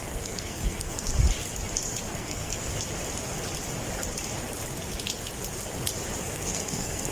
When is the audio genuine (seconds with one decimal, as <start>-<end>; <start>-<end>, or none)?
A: 1.1-2.1; 2.7-6.2